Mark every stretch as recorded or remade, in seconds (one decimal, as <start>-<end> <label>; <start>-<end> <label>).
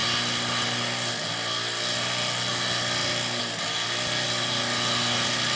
0.0-5.6 recorded